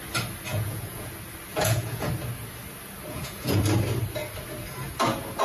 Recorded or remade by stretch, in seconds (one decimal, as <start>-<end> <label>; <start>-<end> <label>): 0.0-0.5 recorded; 0.5-1.1 remade; 1.1-1.5 recorded; 1.5-2.1 remade; 2.1-3.1 recorded; 3.1-3.6 remade; 3.6-5.4 recorded